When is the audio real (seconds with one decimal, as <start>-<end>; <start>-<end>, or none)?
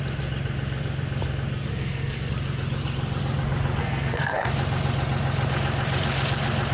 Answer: 0.0-1.7; 2.3-3.8; 4.5-6.7